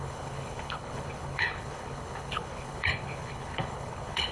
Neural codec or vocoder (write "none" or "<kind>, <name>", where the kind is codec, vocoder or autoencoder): codec, HILCodec